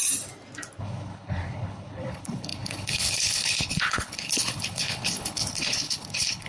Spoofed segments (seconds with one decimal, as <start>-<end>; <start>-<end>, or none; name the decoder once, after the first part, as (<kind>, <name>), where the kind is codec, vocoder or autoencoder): 0.8-6.5 (codec, HILCodec)